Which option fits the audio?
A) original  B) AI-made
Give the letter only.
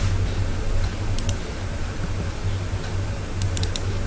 A